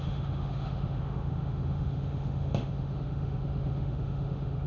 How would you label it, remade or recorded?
remade